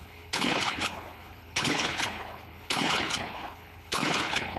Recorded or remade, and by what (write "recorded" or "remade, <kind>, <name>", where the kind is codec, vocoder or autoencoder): remade, codec, HILCodec